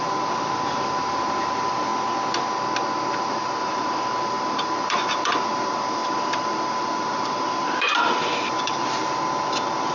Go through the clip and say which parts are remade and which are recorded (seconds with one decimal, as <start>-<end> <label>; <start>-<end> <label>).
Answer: 0.0-1.9 remade; 1.9-3.1 recorded; 3.1-9.9 remade